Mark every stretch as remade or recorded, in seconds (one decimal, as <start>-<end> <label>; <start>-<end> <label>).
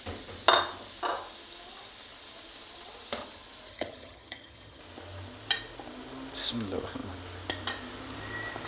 0.0-3.7 recorded; 3.7-4.8 remade; 4.8-8.7 recorded